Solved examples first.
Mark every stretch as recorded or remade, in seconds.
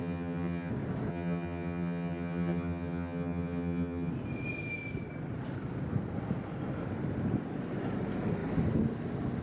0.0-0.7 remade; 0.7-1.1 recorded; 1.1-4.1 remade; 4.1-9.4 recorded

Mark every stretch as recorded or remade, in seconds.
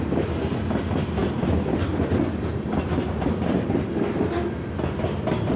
0.0-5.6 recorded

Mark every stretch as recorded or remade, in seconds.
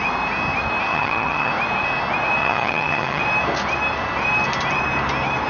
0.0-0.9 recorded; 0.9-1.5 remade; 1.5-2.4 recorded; 2.4-3.2 remade; 3.2-5.5 recorded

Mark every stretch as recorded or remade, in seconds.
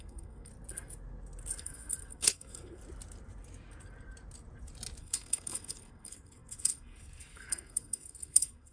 0.0-0.5 remade; 0.5-1.6 recorded; 1.6-2.8 remade; 2.8-5.0 recorded; 5.0-8.7 remade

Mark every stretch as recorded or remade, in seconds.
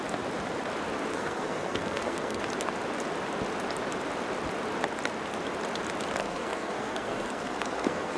0.0-1.1 recorded; 1.1-2.4 remade; 2.4-6.2 recorded; 6.2-8.2 remade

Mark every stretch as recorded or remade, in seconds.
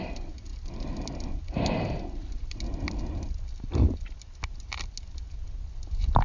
0.0-6.2 recorded